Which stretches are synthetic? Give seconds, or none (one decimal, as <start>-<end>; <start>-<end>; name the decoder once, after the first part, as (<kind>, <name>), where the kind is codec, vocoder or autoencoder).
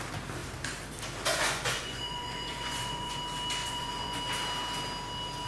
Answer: 1.3-3.2 (vocoder, Vocos); 3.6-4.2